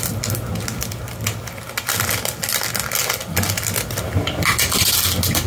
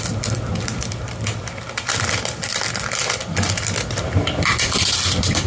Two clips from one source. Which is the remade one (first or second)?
second